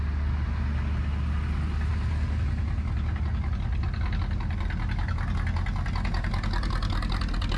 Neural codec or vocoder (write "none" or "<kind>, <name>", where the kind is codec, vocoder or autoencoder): none